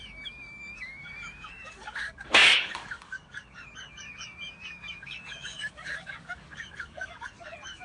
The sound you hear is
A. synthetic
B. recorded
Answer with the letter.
A